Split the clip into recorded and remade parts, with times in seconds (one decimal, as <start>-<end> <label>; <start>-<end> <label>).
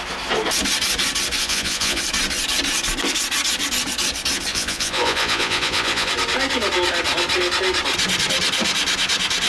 0.0-1.4 recorded; 1.4-2.0 remade; 2.0-4.5 recorded; 4.5-6.1 remade; 6.1-9.5 recorded